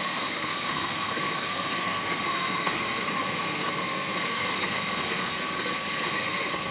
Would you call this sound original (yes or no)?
no